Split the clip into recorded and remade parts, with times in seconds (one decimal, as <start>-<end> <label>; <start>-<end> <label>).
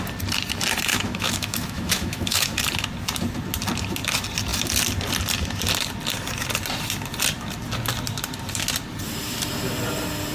0.0-0.9 recorded; 0.9-2.6 remade; 2.6-10.3 recorded